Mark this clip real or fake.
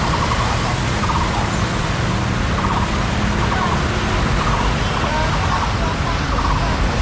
real